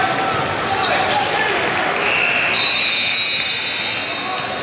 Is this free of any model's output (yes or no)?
yes